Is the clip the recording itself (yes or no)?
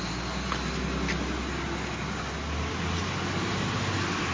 yes